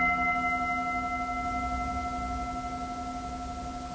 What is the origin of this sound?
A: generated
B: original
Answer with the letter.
B